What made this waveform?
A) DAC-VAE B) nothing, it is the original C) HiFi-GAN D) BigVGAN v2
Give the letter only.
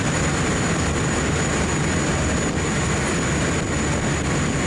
B